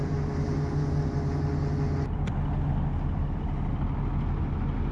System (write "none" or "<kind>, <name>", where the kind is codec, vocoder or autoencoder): none